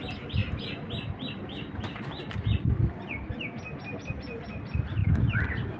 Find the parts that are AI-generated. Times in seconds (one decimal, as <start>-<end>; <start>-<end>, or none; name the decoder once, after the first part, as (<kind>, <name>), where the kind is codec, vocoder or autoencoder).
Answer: none